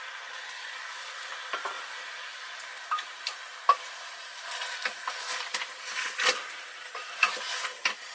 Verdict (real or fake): real